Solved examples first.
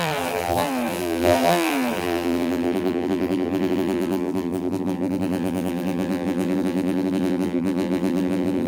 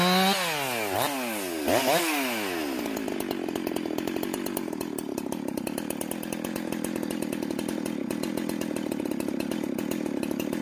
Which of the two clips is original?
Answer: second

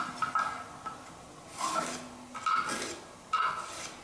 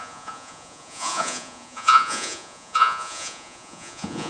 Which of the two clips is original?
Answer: first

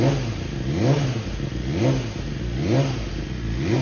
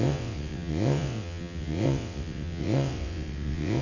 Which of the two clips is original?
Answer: first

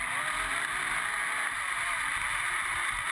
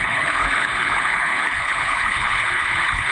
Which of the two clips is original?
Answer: first